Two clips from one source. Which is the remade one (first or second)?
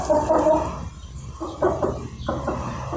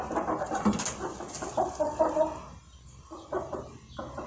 first